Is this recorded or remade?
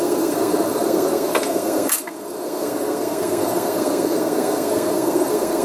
remade